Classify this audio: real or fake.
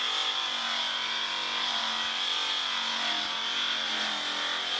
real